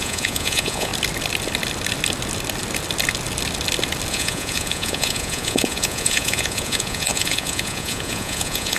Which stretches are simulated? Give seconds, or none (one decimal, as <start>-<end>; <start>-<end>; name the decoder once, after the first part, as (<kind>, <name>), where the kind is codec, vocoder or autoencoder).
0.0-0.9 (vocoder, Vocos); 4.1-8.8